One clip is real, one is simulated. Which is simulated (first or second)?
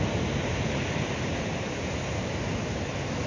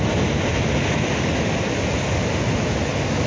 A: first